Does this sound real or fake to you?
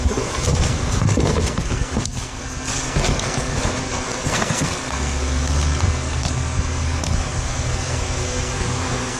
fake